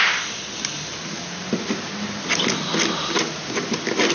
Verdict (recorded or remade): recorded